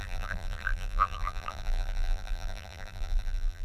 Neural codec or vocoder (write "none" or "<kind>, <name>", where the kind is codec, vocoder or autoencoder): vocoder, BigVGAN v2